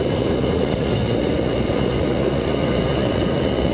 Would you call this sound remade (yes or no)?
yes